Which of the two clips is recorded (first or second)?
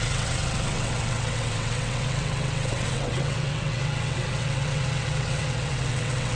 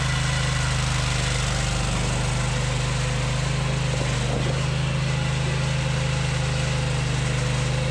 second